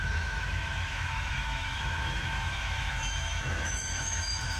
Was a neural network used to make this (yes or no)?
yes